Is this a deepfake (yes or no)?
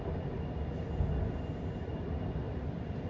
no